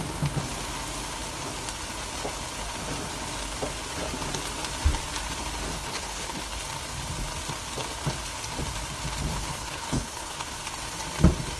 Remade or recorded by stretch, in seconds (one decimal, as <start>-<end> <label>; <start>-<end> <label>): 0.0-5.7 recorded; 5.7-6.4 remade; 6.4-9.3 recorded; 9.3-10.5 remade; 10.5-11.6 recorded